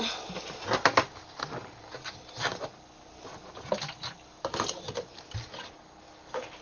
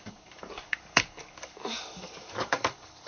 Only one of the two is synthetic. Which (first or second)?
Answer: second